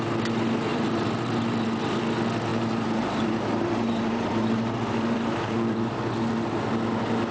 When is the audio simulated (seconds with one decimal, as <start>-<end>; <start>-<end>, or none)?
0.7-2.0; 2.5-6.1